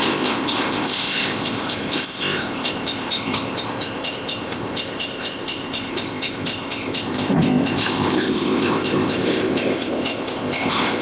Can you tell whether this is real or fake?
fake